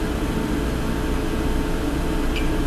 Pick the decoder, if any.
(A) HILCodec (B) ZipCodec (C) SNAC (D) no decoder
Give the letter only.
D